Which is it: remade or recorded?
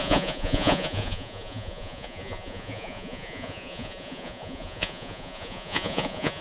remade